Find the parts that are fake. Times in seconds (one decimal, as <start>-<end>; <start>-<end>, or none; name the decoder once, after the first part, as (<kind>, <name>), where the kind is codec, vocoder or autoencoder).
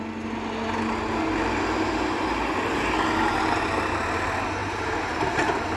4.6-5.8 (vocoder, BigVGAN v2)